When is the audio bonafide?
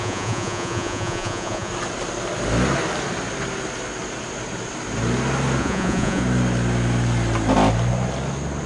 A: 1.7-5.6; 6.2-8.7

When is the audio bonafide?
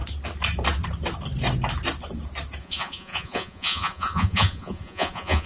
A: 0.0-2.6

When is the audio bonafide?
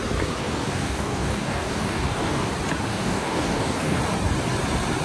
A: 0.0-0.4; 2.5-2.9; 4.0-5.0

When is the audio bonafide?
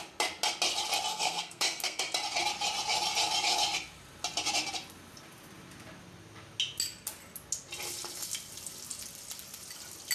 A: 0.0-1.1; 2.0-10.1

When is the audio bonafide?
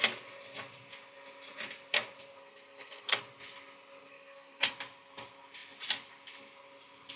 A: 0.0-2.4; 3.2-4.1; 4.7-7.2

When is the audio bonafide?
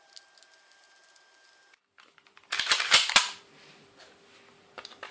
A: 0.0-5.1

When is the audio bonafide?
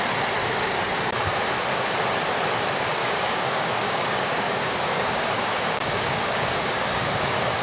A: 0.0-0.4; 1.4-3.0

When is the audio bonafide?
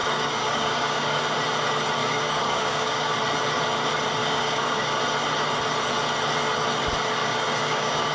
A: 1.2-2.0; 3.1-4.2; 5.0-7.2